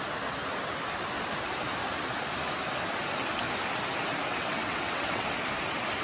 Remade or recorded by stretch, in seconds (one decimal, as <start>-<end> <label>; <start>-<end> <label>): 0.0-4.3 recorded; 4.3-5.3 remade; 5.3-6.0 recorded

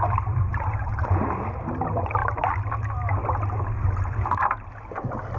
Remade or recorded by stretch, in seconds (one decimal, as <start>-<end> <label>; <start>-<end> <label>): 0.0-5.4 recorded

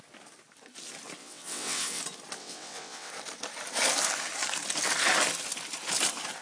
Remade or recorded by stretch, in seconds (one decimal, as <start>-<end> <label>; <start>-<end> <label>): 0.0-1.2 recorded; 1.2-2.0 remade; 2.0-2.4 recorded; 2.4-3.1 remade; 3.1-6.4 recorded

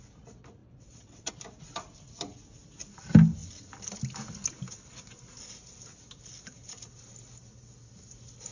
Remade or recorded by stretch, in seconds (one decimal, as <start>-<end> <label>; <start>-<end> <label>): 0.0-0.6 recorded; 0.6-1.3 remade; 1.3-8.5 recorded

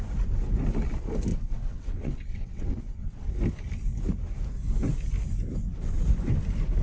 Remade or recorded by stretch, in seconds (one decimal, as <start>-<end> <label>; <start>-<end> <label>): 0.0-1.3 recorded; 1.3-3.3 remade; 3.3-6.8 recorded

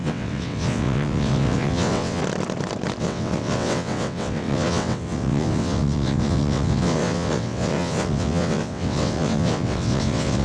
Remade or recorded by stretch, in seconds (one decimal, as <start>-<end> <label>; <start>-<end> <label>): 0.0-2.2 remade; 2.2-3.0 recorded; 3.0-10.4 remade

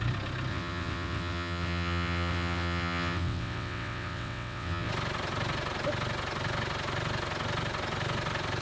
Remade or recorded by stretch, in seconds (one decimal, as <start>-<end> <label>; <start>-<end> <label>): 0.0-0.5 recorded; 0.5-4.9 remade; 4.9-8.6 recorded

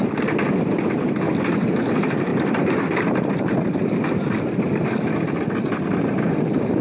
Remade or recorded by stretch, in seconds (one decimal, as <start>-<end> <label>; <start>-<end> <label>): 0.0-6.8 recorded